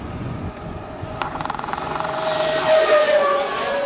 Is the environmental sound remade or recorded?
remade